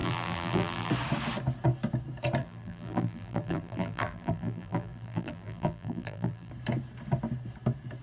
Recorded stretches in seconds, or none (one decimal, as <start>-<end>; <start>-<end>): 0.9-2.4; 6.5-8.0

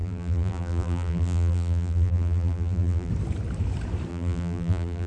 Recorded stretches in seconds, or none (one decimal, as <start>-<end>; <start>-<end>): 3.1-4.1

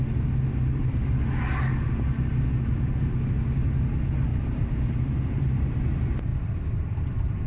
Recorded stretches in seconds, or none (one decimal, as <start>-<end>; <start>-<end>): 0.0-4.3; 5.7-7.5

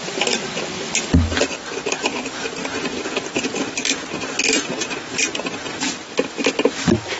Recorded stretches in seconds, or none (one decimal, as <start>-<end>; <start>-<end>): 0.0-2.1; 3.0-7.2

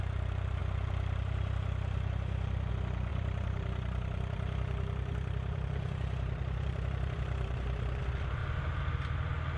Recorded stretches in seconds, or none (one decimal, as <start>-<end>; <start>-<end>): 0.0-3.1; 8.0-9.6

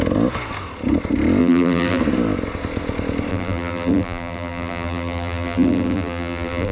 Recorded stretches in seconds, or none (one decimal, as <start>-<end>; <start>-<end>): 0.0-1.4; 2.0-3.3

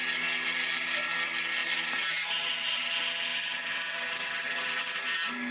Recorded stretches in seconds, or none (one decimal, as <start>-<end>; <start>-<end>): 0.0-1.6; 2.9-3.3; 4.8-5.5